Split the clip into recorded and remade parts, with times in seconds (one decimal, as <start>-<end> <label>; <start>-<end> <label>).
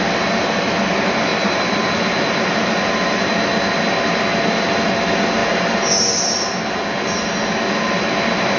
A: 0.0-8.6 recorded